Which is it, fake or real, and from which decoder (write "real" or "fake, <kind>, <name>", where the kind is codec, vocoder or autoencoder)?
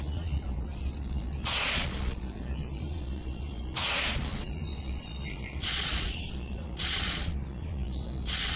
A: fake, vocoder, Vocos